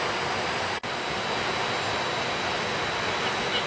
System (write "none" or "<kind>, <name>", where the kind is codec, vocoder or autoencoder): none